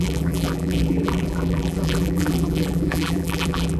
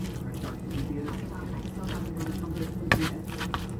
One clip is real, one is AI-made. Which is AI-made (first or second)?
first